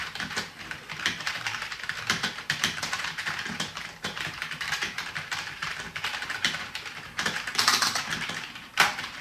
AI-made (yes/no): yes